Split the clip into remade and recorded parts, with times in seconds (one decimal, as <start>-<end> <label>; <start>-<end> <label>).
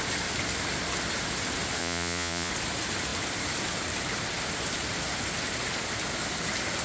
0.0-1.8 recorded; 1.8-2.5 remade; 2.5-6.8 recorded